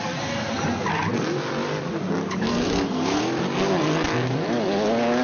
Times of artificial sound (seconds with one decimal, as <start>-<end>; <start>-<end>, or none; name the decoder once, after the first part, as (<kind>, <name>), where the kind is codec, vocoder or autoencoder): 2.5-3.2 (codec, SNAC)